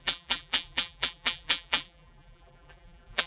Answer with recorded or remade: remade